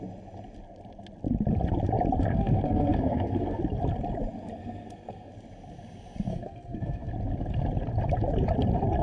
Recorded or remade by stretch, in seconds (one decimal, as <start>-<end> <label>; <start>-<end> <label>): 0.0-2.3 recorded; 2.3-3.6 remade; 3.6-4.6 recorded; 4.6-5.3 remade; 5.3-6.3 recorded; 6.3-7.1 remade; 7.1-9.0 recorded